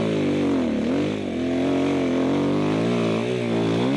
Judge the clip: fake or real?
real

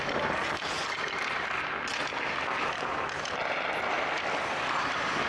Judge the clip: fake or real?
real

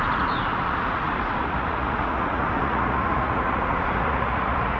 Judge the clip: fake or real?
fake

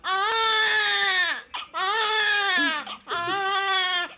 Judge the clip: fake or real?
real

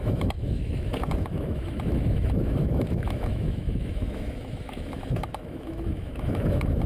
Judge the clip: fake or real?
fake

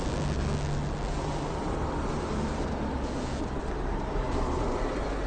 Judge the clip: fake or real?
real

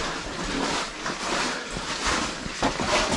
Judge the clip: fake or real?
real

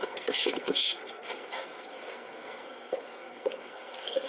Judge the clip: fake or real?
fake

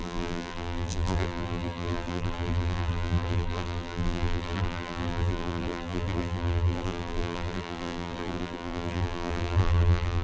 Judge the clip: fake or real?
fake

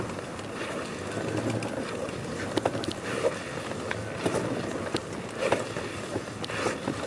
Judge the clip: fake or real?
real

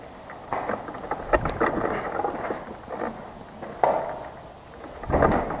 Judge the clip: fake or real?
real